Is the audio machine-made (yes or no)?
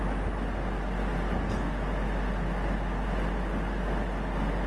no